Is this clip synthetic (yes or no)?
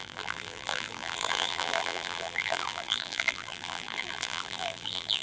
yes